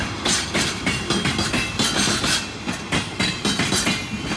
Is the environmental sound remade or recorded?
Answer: recorded